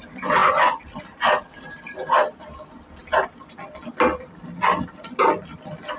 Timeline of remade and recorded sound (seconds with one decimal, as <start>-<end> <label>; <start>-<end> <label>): 0.0-0.4 recorded; 0.4-1.4 remade; 1.4-6.0 recorded